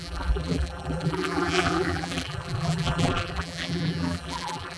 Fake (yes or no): yes